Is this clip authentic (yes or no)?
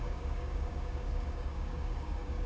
no